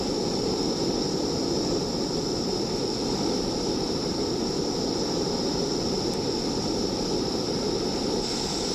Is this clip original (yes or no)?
no